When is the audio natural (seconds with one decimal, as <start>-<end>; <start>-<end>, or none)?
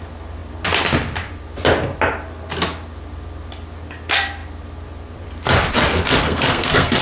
0.0-6.2